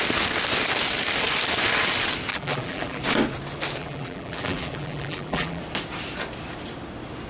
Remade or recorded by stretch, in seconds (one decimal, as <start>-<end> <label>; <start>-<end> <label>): 0.0-2.3 recorded; 2.3-3.0 remade; 3.0-3.8 recorded; 3.8-5.6 remade; 5.6-7.3 recorded